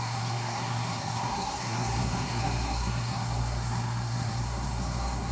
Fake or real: fake